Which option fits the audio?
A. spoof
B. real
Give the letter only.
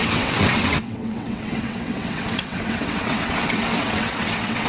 A